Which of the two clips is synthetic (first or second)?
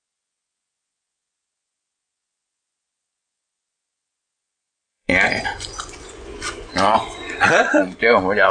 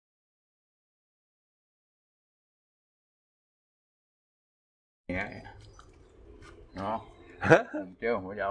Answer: first